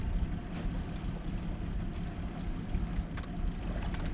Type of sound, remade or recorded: recorded